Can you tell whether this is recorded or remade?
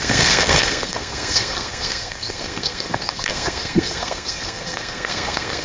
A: remade